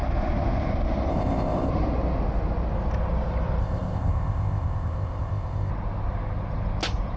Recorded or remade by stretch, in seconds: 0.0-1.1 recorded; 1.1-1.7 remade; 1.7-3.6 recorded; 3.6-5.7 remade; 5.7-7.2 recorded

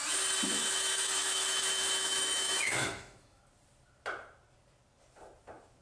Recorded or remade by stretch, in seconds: 0.0-0.5 recorded; 0.5-3.4 remade; 3.4-5.8 recorded

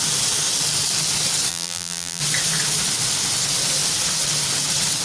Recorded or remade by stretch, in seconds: 0.0-1.5 recorded; 1.5-2.2 remade; 2.2-5.0 recorded

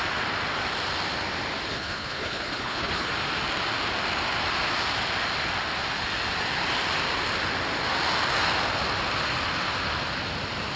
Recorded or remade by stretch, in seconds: 0.0-1.7 recorded; 1.7-3.1 remade; 3.1-10.8 recorded